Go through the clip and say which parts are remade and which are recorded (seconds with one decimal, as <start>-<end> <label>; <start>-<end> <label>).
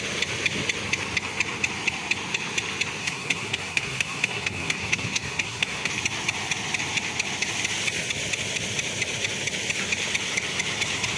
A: 0.0-3.0 recorded; 3.0-5.9 remade; 5.9-11.2 recorded